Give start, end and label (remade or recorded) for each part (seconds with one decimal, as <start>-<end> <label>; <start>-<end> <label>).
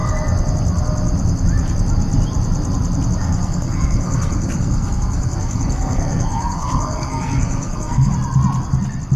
0.0-3.2 recorded; 3.2-8.1 remade; 8.1-9.2 recorded